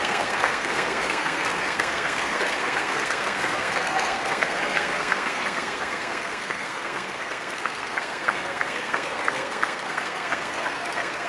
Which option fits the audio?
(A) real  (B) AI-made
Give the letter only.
B